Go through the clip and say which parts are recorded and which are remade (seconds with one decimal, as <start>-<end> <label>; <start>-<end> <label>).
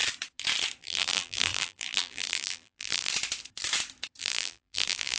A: 0.0-0.8 recorded; 0.8-3.1 remade; 3.1-4.2 recorded; 4.2-5.2 remade